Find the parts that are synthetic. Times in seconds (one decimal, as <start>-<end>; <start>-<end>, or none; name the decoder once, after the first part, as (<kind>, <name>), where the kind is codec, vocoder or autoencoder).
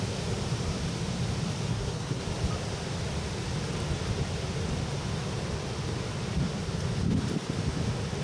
1.7-2.2 (codec, SNAC)